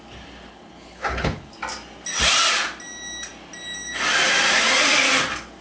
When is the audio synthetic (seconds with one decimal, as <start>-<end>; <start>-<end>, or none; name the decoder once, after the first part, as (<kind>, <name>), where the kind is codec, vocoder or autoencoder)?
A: 0.5-1.5 (codec, HILCodec)